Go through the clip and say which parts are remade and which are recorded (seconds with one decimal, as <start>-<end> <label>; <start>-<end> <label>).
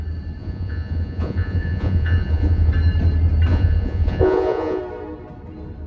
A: 0.0-0.4 recorded; 0.4-2.7 remade; 2.7-3.5 recorded; 3.5-4.8 remade; 4.8-5.9 recorded